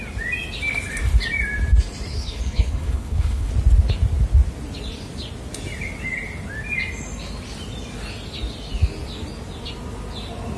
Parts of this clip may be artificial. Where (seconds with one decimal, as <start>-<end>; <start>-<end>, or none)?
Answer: 2.1-3.5

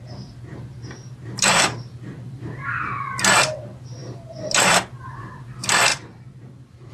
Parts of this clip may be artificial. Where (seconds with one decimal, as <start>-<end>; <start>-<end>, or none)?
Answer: none